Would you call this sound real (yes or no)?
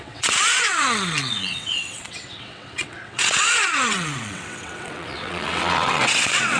no